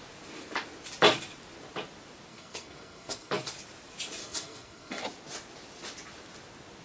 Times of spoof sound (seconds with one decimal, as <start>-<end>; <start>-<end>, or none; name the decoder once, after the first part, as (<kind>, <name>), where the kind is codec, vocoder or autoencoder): 2.3-3.3 (codec, SNAC); 4.2-5.0